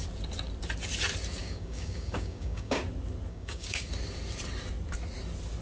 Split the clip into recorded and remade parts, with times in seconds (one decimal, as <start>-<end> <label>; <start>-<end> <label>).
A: 0.0-1.4 recorded; 1.4-2.8 remade; 2.8-3.3 recorded; 3.3-3.9 remade; 3.9-5.6 recorded